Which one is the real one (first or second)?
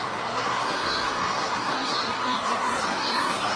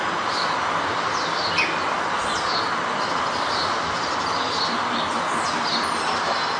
second